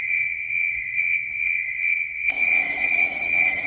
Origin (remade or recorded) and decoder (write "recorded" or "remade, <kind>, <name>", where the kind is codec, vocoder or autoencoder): remade, vocoder, WaveNeXt